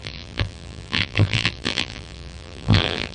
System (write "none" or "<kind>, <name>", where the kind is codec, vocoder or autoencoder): vocoder, BigVGAN v2